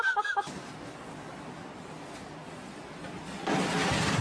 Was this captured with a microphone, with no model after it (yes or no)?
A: yes